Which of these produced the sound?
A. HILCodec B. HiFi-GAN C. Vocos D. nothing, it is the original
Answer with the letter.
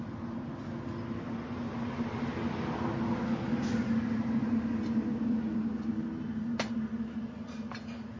D